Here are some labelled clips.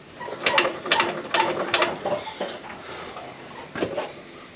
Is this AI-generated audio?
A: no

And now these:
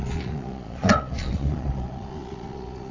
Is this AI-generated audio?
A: yes